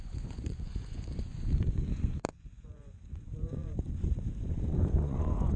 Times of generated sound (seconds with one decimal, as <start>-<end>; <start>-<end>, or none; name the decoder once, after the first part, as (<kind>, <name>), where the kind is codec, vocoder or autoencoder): 0.0-5.6 (vocoder, Vocos)